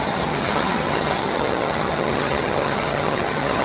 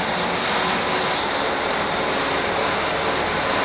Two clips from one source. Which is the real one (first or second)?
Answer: second